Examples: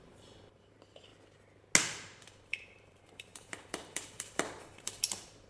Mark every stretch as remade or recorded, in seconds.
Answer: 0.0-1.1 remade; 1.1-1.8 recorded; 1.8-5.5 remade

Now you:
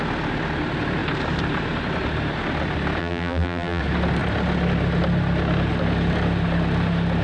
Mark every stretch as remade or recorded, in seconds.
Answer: 0.0-3.0 recorded; 3.0-3.8 remade; 3.8-7.2 recorded

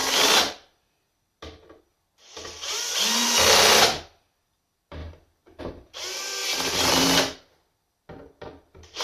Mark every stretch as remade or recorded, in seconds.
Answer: 0.0-9.0 recorded